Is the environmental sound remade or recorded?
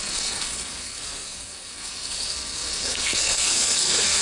remade